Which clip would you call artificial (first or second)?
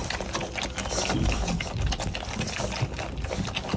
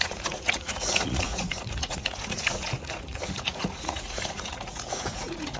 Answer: second